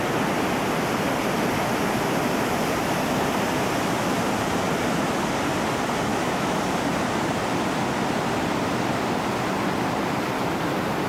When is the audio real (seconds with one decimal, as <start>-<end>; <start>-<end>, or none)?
0.0-6.1; 6.6-11.1